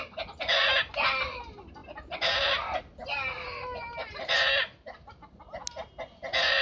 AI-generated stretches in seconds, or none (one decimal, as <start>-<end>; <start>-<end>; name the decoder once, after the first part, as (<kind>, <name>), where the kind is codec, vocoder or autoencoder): none